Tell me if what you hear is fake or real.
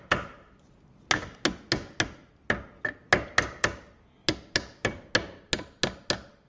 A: real